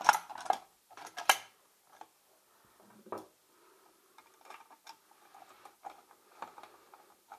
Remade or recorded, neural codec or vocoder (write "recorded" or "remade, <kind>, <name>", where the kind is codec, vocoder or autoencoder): recorded